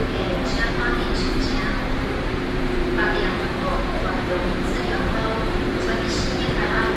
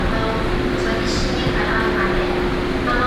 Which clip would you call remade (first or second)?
first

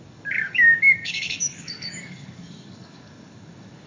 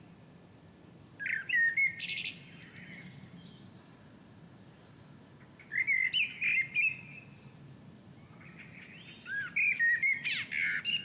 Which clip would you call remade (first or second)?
first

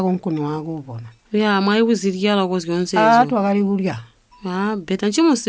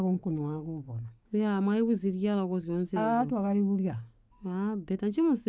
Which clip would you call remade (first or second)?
second